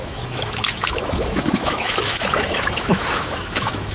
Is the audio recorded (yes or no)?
no